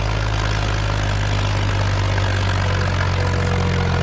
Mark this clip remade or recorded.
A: recorded